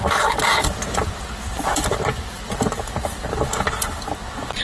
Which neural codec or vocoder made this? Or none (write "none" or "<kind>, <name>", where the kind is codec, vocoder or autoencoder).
none